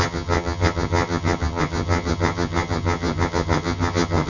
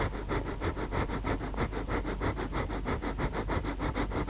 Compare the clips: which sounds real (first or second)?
second